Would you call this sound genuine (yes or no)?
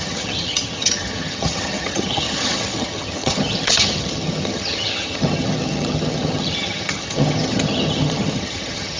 no